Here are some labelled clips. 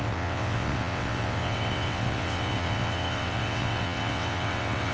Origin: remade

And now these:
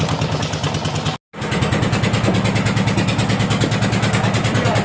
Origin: recorded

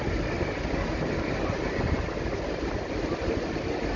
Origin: recorded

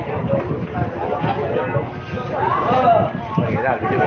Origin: recorded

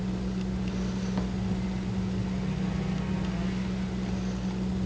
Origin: recorded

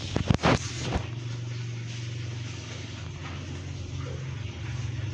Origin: recorded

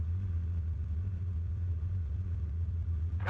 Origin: remade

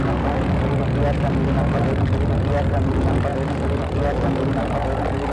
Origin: recorded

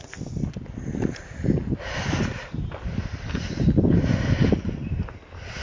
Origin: recorded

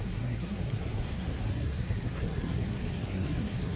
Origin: remade